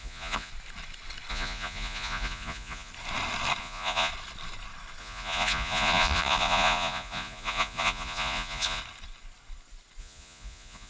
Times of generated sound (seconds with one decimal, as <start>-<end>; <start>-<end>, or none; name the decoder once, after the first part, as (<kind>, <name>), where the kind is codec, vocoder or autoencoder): 0.0-0.5 (vocoder, Vocos); 1.3-2.9; 3.6-4.1; 5.0-8.8; 10.0-10.9